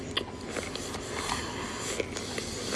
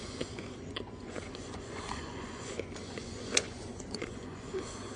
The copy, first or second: second